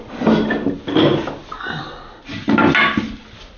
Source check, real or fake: real